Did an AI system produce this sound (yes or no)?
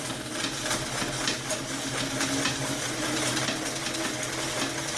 no